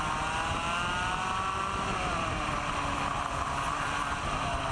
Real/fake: real